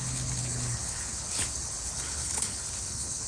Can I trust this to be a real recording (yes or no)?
no